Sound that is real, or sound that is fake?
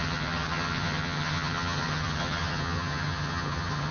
fake